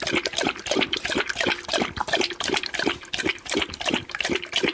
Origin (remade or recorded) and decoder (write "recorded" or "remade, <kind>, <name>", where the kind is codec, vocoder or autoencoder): recorded